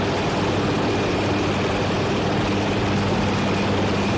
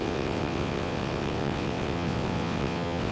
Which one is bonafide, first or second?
first